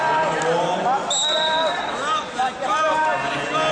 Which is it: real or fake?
real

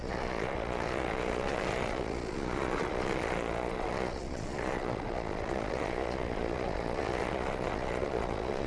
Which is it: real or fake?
fake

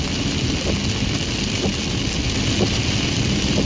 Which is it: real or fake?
real